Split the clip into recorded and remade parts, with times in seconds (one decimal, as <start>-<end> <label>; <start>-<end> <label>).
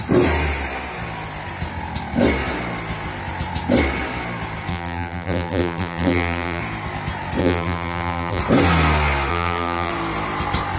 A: 0.0-4.7 recorded; 4.7-6.6 remade; 6.6-7.4 recorded; 7.4-8.4 remade; 8.4-9.3 recorded; 9.3-9.9 remade; 9.9-10.8 recorded